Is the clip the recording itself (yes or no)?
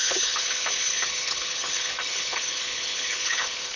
no